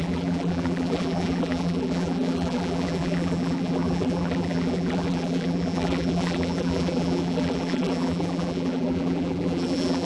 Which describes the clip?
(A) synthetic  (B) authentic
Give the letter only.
A